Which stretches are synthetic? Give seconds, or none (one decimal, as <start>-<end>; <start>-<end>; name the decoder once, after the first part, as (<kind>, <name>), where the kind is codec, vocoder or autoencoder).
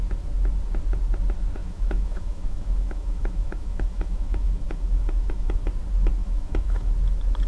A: 1.6-5.6 (autoencoder, DAC-VAE); 6.2-6.9